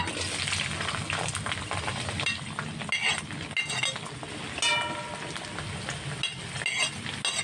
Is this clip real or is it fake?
real